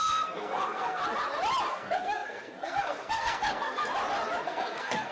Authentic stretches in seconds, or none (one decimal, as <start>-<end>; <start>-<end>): 1.0-1.7; 3.8-4.4